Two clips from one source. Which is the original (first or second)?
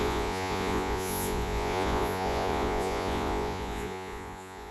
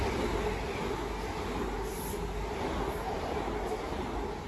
second